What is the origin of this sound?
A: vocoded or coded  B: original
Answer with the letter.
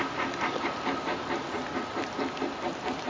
B